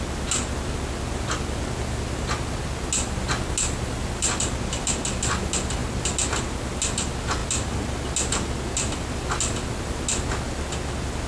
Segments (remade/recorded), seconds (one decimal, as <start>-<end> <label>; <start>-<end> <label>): 0.0-11.3 recorded